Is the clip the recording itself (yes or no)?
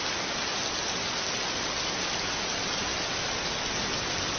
yes